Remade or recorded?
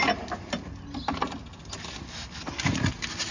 recorded